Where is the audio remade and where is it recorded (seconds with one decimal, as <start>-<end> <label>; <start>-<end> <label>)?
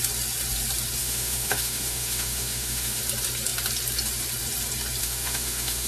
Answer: 0.0-1.0 recorded; 1.0-3.0 remade; 3.0-5.0 recorded; 5.0-5.9 remade